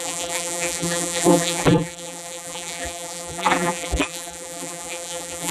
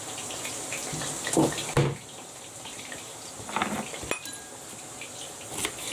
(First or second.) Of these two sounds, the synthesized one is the first